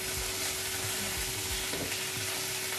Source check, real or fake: real